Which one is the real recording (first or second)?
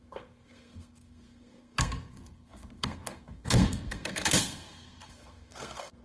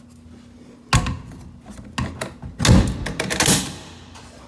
second